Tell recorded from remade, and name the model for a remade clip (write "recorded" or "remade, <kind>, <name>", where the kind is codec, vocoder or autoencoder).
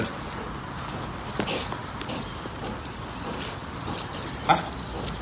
recorded